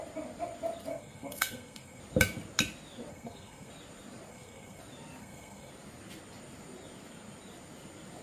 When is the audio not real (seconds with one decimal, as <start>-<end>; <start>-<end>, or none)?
0.9-2.0; 3.1-3.7; 4.3-4.8; 5.2-5.7